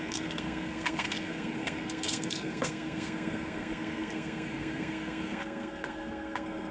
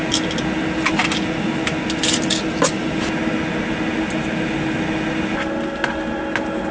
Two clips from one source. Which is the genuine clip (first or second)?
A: second